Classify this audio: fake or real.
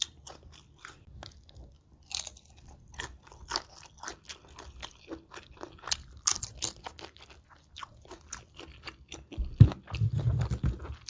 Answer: real